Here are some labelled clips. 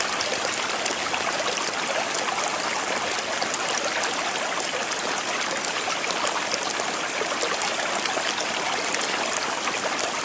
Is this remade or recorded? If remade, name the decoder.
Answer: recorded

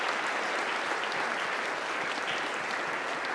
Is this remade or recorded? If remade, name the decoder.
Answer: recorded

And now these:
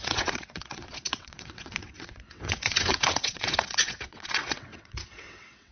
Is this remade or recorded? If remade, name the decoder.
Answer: remade, vocoder, WaveNeXt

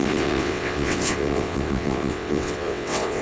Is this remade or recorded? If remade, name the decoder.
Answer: remade, vocoder, WaveNeXt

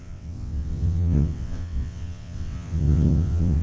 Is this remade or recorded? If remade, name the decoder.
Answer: remade, vocoder, WaveNeXt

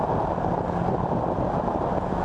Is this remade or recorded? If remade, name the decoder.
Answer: recorded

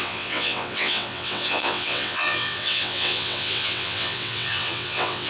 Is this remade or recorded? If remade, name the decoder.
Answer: remade, vocoder, WaveNeXt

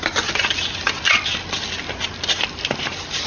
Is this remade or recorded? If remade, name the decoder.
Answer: recorded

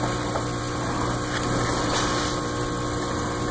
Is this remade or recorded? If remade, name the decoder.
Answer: recorded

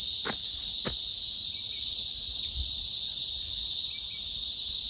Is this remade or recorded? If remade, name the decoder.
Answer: recorded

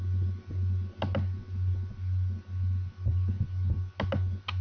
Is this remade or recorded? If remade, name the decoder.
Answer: recorded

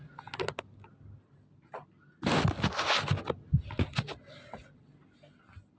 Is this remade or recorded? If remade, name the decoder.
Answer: recorded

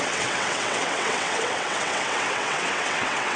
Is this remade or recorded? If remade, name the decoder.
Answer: remade, vocoder, WaveNeXt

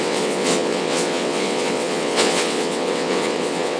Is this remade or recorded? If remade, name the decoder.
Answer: remade, vocoder, WaveNeXt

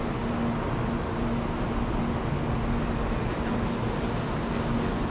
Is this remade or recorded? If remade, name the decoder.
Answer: recorded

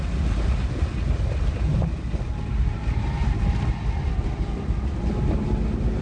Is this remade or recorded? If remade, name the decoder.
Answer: recorded